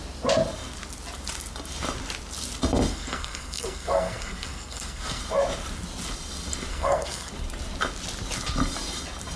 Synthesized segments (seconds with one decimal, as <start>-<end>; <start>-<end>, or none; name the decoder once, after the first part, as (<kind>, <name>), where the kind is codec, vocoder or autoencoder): 2.9-5.2 (codec, SNAC); 6.7-7.3